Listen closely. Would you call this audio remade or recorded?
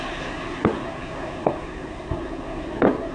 remade